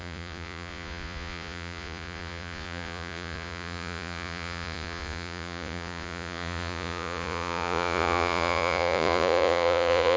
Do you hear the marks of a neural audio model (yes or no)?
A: yes